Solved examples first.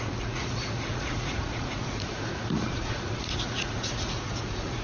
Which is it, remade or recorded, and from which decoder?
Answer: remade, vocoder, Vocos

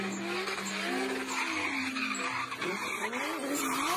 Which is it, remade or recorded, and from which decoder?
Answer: recorded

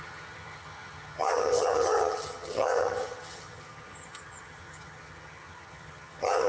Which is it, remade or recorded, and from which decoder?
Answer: remade, vocoder, HiFi-GAN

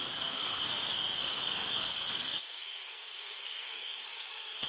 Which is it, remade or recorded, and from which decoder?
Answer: remade, codec, SNAC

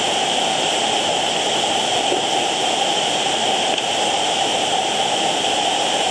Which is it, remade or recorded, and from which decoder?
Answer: remade, vocoder, BigVGAN v2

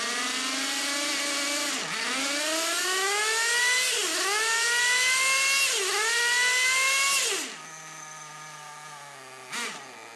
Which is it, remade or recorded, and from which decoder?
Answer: recorded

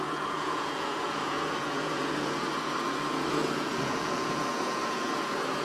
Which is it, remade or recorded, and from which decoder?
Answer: remade, vocoder, Vocos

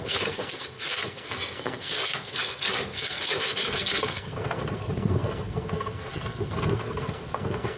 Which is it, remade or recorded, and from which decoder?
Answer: remade, codec, SNAC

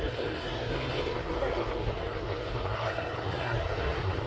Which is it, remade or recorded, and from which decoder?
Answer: remade, codec, SNAC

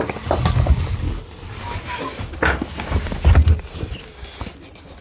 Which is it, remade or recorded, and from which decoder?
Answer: recorded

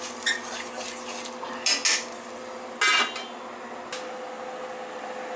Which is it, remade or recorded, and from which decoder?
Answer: recorded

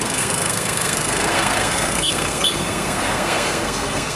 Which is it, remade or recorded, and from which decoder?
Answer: remade, codec, SNAC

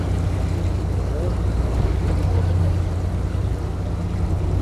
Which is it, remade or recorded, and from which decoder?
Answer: recorded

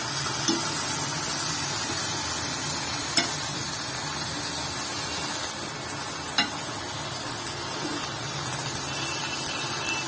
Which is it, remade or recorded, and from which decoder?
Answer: recorded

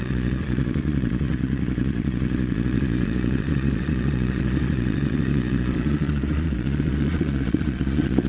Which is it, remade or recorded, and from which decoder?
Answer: remade, vocoder, Vocos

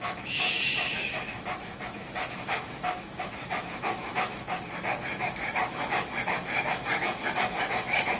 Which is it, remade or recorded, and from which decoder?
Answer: remade, autoencoder, DAC-VAE